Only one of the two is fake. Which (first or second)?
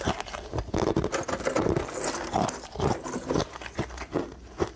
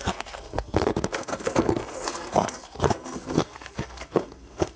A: second